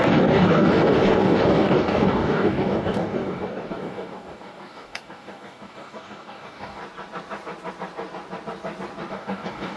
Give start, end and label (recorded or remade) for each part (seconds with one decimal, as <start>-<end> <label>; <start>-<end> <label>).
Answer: 0.0-6.8 remade; 6.8-9.1 recorded; 9.1-9.8 remade